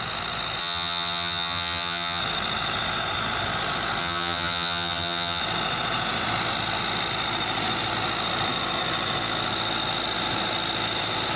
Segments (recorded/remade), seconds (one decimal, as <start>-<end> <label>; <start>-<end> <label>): 0.0-0.6 recorded; 0.6-2.2 remade; 2.2-4.0 recorded; 4.0-5.4 remade; 5.4-11.4 recorded

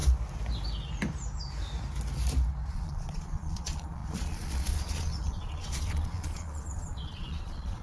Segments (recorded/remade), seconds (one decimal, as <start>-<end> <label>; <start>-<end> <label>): 0.0-2.7 recorded; 2.7-7.8 remade

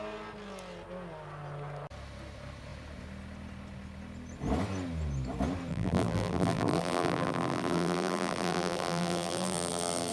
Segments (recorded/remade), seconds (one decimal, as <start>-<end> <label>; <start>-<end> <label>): 0.0-5.7 recorded; 5.7-10.1 remade